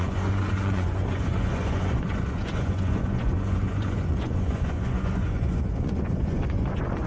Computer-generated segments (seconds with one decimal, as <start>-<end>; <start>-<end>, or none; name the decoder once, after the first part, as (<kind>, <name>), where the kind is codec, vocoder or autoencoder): 0.0-7.1 (vocoder, Vocos)